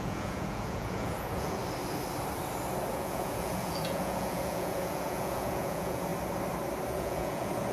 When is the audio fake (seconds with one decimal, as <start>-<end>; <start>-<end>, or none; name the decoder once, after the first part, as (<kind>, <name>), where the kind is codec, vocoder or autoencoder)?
0.0-1.6 (vocoder, Vocos); 2.9-6.1; 6.9-7.7